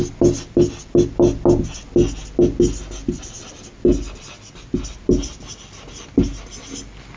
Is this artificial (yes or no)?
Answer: no